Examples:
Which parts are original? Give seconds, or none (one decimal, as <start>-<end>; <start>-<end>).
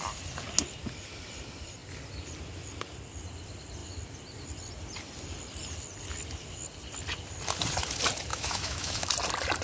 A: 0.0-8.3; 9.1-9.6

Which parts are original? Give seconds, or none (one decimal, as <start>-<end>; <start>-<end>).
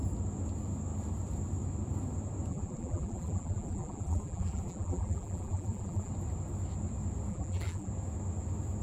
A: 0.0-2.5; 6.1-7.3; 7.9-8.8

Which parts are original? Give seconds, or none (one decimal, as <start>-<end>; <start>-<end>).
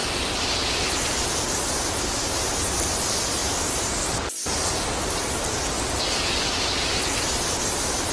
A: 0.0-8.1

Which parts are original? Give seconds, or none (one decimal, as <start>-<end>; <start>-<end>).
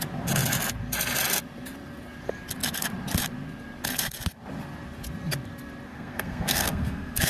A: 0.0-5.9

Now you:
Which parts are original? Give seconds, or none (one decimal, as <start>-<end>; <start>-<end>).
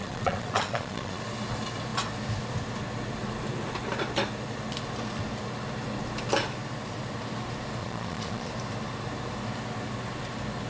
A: 1.2-7.8; 8.5-10.7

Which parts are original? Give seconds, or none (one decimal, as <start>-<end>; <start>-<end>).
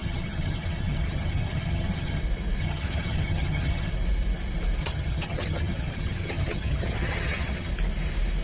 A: 2.2-2.6; 3.9-4.8; 7.7-8.4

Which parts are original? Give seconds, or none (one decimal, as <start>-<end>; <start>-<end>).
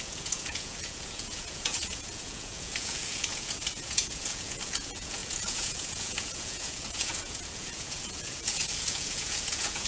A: none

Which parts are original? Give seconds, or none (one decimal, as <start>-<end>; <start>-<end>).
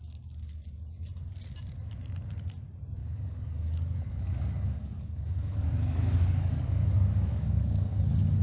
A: 0.0-3.0; 8.0-8.4